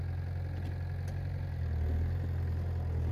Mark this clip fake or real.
real